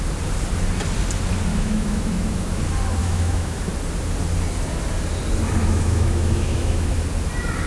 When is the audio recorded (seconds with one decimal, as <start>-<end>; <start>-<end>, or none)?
0.0-1.5; 2.6-3.0; 3.7-5.6; 7.0-7.7